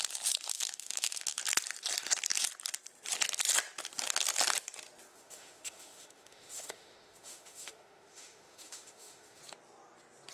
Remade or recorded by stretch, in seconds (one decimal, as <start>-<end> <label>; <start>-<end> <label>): 0.0-0.5 recorded; 0.5-1.4 remade; 1.4-5.1 recorded; 5.1-9.4 remade; 9.4-10.3 recorded